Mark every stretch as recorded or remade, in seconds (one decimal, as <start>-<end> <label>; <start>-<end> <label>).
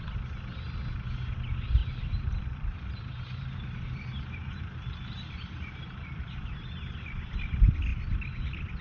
0.0-1.8 recorded; 1.8-6.7 remade; 6.7-8.8 recorded